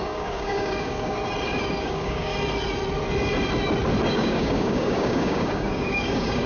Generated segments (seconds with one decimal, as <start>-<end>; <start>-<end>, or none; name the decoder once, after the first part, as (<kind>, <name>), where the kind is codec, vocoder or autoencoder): 0.0-1.2 (codec, DAC); 1.8-2.3; 4.1-6.5